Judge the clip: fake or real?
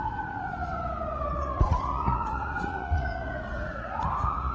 fake